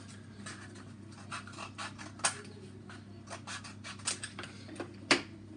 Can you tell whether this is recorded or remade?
recorded